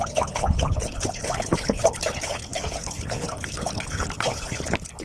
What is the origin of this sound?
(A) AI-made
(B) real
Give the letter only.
A